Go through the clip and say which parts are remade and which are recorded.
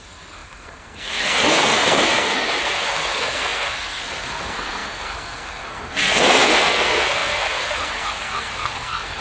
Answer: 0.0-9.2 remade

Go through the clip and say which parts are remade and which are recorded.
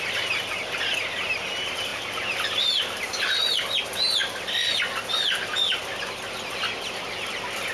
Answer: 0.0-7.7 recorded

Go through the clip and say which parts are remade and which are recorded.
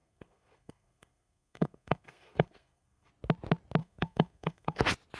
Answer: 0.0-3.1 remade; 3.1-3.8 recorded; 3.8-4.8 remade; 4.8-5.2 recorded